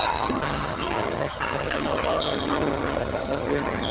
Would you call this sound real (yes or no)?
no